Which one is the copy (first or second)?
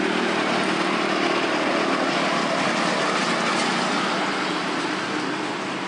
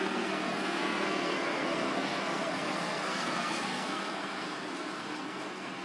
second